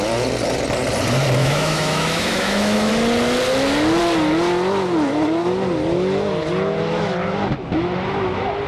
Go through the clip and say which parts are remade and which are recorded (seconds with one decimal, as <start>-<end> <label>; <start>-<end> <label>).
0.0-1.4 recorded; 1.4-2.9 remade; 2.9-8.7 recorded